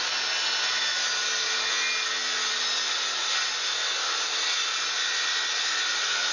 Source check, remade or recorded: recorded